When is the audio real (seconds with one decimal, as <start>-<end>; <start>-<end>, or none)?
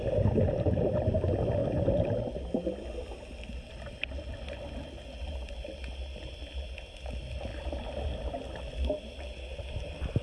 0.0-10.2